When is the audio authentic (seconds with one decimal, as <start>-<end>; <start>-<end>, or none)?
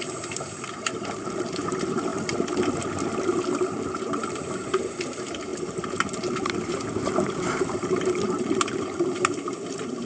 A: 2.1-3.2; 5.5-7.6